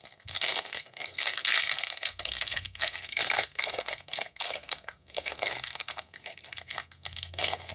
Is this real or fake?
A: fake